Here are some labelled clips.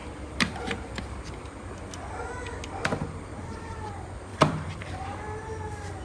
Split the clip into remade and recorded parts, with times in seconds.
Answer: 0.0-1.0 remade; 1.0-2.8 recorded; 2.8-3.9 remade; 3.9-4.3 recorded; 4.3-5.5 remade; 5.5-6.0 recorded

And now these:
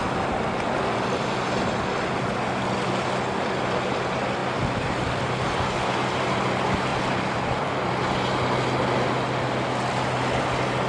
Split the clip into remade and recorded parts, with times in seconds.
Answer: 0.0-4.4 recorded; 4.4-5.2 remade; 5.2-6.9 recorded; 6.9-8.1 remade; 8.1-10.9 recorded

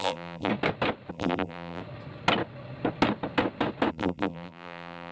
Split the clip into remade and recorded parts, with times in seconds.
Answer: 0.0-0.5 remade; 0.5-1.1 recorded; 1.1-1.8 remade; 1.8-3.9 recorded; 3.9-5.1 remade

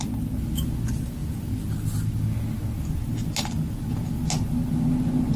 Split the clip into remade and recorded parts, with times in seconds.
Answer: 0.0-5.4 recorded

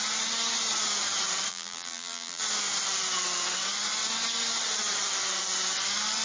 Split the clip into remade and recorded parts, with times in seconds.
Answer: 0.0-1.5 recorded; 1.5-2.4 remade; 2.4-6.2 recorded